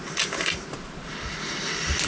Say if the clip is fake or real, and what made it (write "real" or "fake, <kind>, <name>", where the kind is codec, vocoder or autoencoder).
real